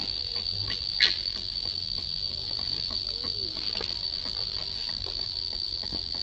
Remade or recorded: remade